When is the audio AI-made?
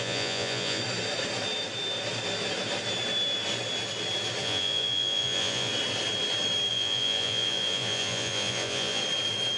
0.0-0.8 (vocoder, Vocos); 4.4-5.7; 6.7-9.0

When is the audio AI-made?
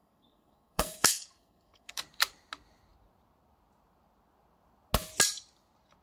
0.0-2.0 (codec, SNAC)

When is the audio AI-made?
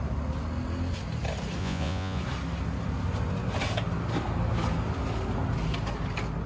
1.6-2.2 (vocoder, Vocos)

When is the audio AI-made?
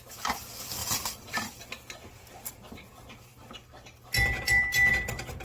none